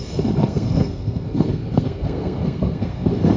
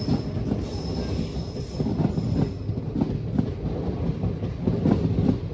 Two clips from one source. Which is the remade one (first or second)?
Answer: first